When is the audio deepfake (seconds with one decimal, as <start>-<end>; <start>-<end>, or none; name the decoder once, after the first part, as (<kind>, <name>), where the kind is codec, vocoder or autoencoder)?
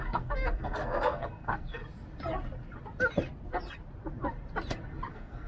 0.0-1.8 (codec, SNAC); 5.1-5.5